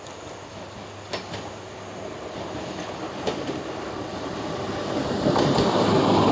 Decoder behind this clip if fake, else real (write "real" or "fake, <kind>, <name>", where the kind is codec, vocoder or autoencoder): real